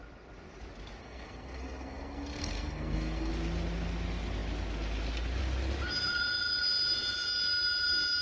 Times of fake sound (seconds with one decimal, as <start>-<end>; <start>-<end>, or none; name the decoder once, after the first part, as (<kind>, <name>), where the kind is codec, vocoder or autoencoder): 1.0-3.3 (codec, SNAC)